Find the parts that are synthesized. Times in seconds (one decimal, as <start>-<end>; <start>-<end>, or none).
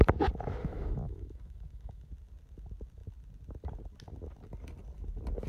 0.6-2.1